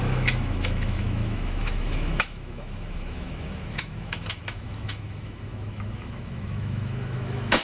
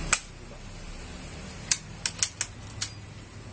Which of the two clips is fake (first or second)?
first